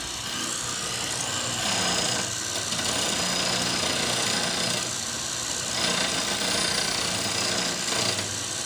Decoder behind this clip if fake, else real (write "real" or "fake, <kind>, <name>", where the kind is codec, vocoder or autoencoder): real